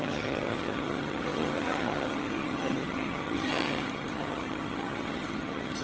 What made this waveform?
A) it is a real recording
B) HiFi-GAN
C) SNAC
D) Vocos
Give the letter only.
B